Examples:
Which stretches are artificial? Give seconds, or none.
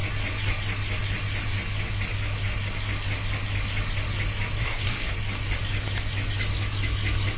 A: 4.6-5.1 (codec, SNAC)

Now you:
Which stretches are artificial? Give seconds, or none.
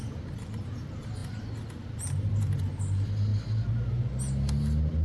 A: none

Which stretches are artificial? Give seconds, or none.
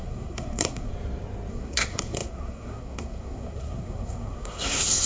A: 0.0-0.9 (codec, SNAC); 1.5-5.1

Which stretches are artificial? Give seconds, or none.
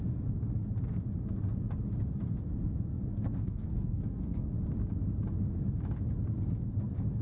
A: 3.1-4.5 (codec, SNAC)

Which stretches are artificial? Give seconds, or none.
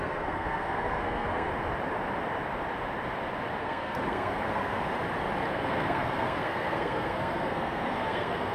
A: 0.0-1.5 (codec, SNAC); 3.6-4.8; 5.5-8.5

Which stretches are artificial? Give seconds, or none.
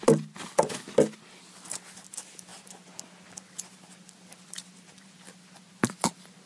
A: none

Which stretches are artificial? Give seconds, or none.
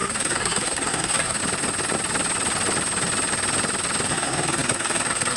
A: 0.0-1.4 (codec, SNAC); 4.1-5.4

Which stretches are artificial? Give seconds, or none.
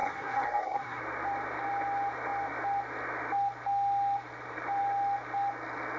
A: 0.0-1.0 (codec, SNAC)